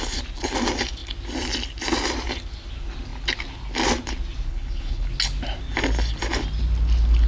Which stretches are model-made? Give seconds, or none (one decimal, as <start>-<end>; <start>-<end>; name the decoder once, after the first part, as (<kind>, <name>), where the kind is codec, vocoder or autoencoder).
4.5-5.1 (codec, HILCodec)